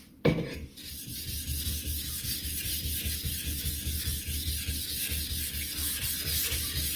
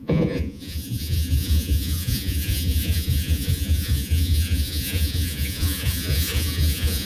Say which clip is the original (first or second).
first